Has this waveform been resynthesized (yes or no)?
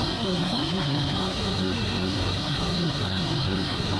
yes